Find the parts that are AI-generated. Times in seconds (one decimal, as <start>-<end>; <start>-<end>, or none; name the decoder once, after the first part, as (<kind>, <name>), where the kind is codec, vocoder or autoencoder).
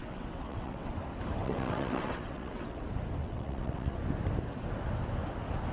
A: 0.0-0.9 (vocoder, WaveNeXt); 1.4-2.8; 3.2-4.0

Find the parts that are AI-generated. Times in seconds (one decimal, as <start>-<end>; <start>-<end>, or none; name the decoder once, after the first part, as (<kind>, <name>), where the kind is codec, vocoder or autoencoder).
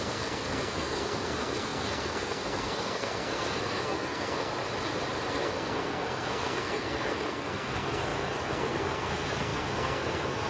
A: 0.0-4.5 (codec, SNAC); 5.3-10.5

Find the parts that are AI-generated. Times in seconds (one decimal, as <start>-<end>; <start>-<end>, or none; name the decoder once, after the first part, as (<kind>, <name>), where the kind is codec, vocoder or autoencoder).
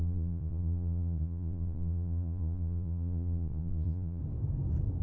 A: 0.0-4.2 (vocoder, Vocos)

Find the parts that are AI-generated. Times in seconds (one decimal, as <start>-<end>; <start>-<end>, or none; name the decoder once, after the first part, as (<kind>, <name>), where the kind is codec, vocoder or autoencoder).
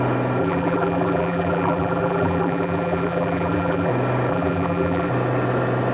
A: 0.4-3.9 (vocoder, BigVGAN v2); 4.3-5.1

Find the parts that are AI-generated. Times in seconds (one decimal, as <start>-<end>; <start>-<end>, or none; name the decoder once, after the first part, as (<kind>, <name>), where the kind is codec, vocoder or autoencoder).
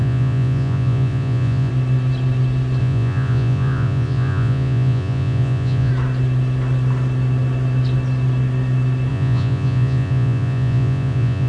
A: 0.0-1.7 (vocoder, Vocos); 2.8-5.9; 9.1-11.5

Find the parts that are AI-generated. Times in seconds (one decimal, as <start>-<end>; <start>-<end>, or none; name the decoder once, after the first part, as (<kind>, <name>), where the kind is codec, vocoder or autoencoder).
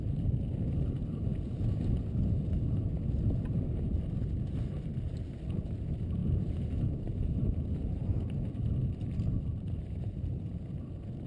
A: 0.0-1.3 (vocoder, BigVGAN v2); 4.6-11.3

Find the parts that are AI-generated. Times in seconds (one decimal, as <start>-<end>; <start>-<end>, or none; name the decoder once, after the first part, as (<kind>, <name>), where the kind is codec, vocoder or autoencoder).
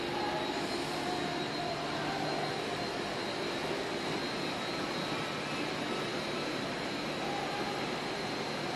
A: 6.1-8.1 (vocoder, BigVGAN v2)